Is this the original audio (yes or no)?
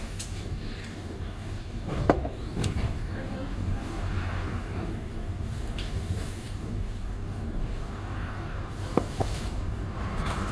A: no